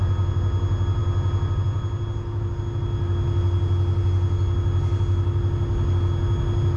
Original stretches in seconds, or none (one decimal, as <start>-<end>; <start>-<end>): 0.0-6.8